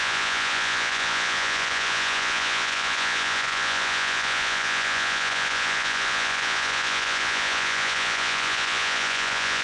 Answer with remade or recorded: remade